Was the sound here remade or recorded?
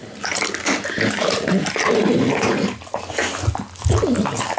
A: recorded